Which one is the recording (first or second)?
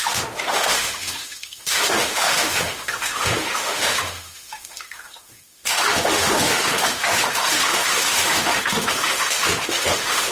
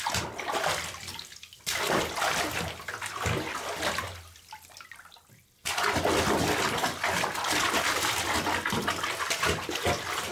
second